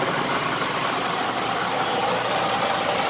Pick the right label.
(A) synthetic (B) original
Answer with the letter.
B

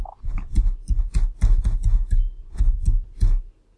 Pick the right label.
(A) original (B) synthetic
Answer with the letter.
A